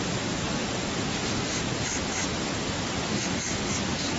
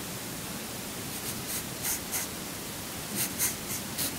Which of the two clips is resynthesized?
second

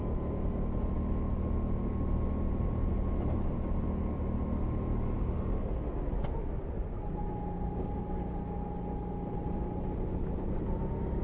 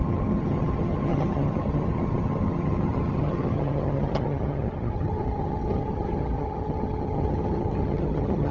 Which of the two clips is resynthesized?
second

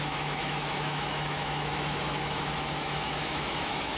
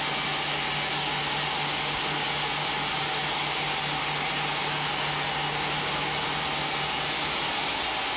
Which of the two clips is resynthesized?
first